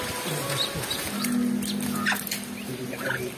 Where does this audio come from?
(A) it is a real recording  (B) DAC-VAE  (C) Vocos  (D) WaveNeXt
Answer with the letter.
A